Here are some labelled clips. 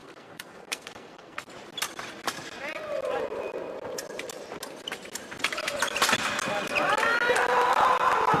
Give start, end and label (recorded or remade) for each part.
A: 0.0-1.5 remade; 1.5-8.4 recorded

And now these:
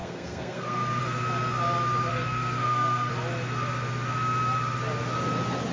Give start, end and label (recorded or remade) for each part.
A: 0.0-1.0 remade; 1.0-2.1 recorded; 2.1-3.1 remade; 3.1-5.7 recorded